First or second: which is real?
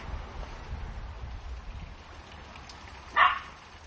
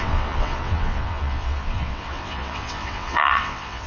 first